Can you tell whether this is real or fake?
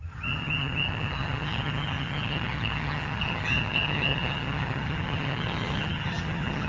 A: fake